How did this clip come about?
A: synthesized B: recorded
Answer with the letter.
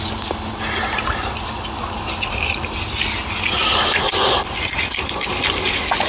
B